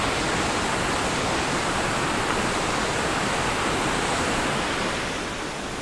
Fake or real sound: real